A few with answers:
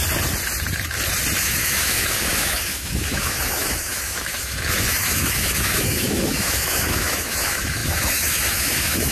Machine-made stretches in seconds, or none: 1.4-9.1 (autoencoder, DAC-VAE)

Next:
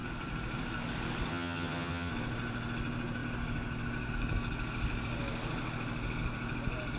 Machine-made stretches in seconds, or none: 1.3-2.1 (vocoder, HiFi-GAN)

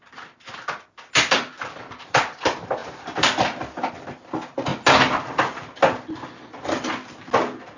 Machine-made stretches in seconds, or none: none

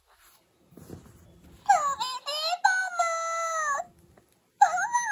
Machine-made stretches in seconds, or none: none

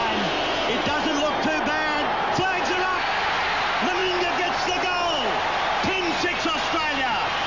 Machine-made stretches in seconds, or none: none